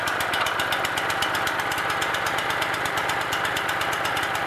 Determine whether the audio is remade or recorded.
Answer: recorded